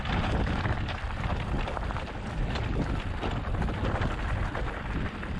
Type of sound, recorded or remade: recorded